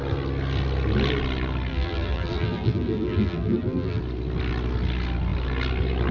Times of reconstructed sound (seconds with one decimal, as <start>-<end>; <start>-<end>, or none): 1.7-4.0